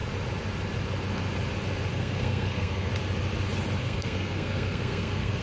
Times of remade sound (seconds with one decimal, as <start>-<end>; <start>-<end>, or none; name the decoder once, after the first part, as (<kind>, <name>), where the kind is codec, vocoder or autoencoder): 1.9-2.9 (codec, SNAC); 3.8-5.4

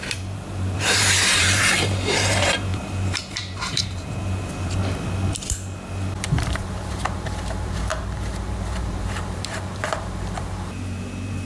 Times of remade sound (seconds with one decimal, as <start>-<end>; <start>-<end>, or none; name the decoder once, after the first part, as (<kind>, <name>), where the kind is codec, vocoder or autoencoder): 0.0-4.8 (vocoder, BigVGAN v2); 6.4-11.5

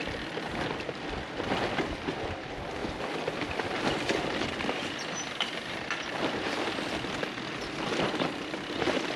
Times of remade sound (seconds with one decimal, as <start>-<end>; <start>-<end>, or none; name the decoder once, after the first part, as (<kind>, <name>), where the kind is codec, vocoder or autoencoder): none

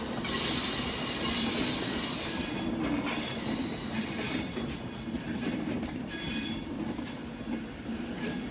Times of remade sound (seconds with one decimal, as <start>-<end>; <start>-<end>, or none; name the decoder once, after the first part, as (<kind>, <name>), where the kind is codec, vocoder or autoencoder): none